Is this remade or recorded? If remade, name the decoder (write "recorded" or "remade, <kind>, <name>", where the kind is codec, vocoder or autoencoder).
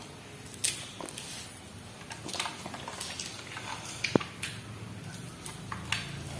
recorded